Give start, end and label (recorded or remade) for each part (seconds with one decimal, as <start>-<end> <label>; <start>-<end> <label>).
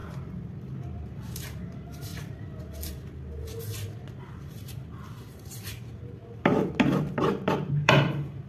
0.0-1.0 recorded; 1.0-2.1 remade; 2.1-4.2 recorded; 4.2-6.2 remade; 6.2-7.7 recorded; 7.7-8.5 remade